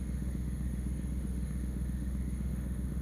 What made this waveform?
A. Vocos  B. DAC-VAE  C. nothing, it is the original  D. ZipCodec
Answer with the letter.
B